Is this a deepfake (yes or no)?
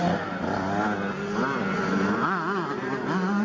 no